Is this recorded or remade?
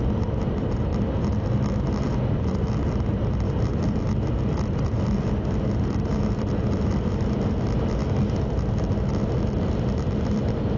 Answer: recorded